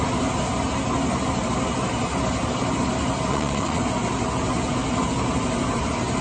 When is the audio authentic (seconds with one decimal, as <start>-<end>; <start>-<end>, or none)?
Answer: 0.0-3.3; 3.8-6.2